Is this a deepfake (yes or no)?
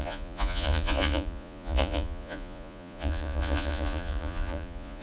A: yes